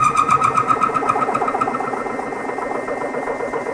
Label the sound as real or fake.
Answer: real